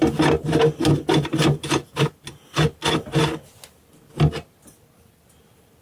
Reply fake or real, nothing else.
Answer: real